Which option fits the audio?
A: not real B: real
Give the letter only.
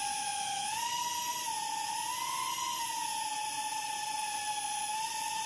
B